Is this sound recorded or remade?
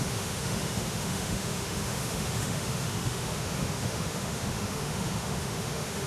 remade